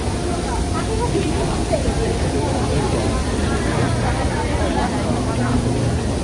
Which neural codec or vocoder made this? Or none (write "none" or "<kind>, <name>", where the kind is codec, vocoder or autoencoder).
none